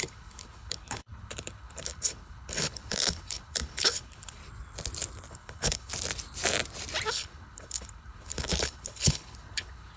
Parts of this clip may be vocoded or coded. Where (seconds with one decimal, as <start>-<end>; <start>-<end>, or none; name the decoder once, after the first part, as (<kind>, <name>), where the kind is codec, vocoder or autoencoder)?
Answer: 0.0-4.4 (codec, HILCodec); 5.3-5.9; 7.1-10.0